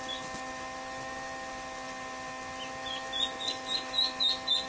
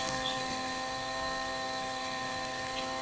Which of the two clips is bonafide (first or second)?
first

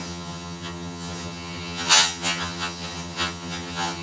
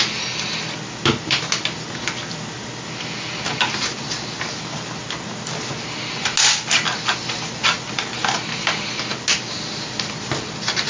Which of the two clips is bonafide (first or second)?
second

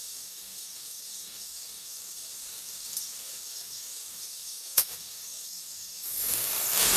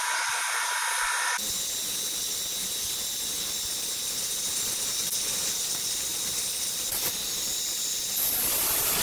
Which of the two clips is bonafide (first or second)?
second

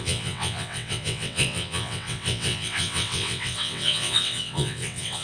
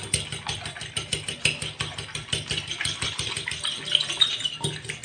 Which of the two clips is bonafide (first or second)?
second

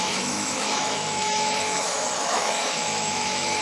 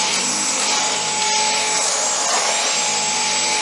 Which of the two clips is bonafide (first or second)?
second